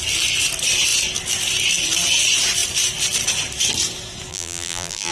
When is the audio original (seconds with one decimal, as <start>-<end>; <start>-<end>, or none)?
0.0-4.3

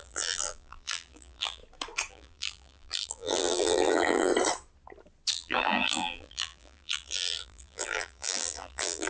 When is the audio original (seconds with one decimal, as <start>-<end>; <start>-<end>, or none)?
1.6-2.1; 4.3-5.3